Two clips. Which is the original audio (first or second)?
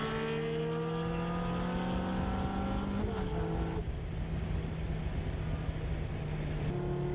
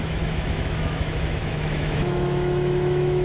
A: first